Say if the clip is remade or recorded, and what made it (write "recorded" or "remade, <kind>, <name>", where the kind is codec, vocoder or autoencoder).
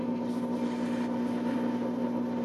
recorded